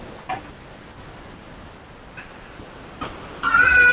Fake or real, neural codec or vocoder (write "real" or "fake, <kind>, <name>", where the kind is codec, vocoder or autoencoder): real